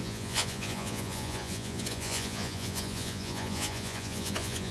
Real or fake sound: fake